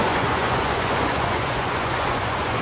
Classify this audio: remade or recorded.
remade